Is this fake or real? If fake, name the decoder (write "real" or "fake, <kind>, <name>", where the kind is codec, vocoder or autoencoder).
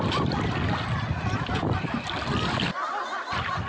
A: real